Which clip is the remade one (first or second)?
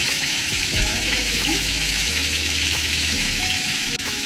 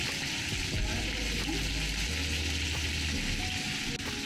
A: first